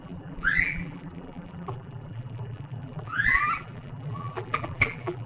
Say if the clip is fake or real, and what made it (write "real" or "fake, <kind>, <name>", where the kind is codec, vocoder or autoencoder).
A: fake, vocoder, BigVGAN v2